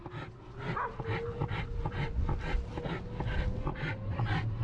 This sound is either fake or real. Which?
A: real